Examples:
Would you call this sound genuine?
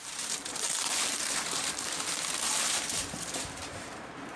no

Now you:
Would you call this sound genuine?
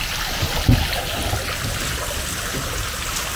yes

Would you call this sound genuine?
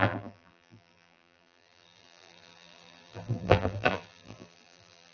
no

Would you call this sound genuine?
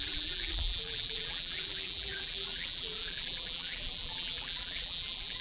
no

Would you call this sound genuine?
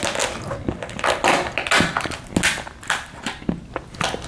yes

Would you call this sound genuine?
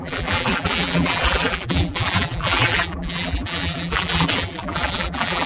no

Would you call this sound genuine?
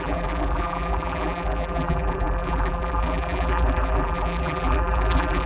no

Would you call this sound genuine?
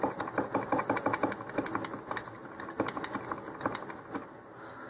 yes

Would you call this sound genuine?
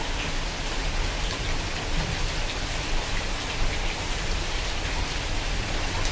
yes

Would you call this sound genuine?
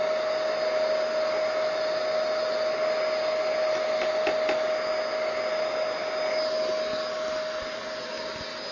yes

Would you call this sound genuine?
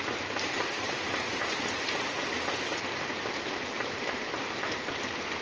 no